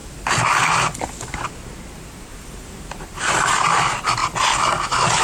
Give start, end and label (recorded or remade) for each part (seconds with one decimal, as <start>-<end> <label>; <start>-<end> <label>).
0.0-2.3 recorded; 2.3-3.2 remade; 3.2-5.2 recorded